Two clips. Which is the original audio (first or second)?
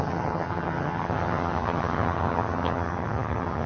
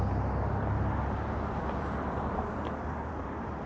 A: second